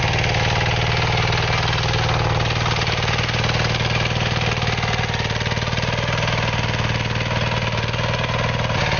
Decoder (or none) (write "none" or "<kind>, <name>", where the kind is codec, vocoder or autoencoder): none